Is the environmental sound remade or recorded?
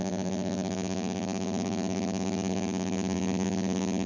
remade